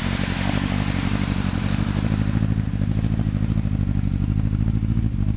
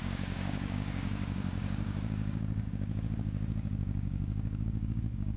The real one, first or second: first